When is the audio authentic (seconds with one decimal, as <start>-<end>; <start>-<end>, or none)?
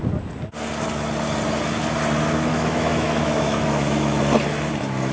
0.0-2.5; 4.2-5.1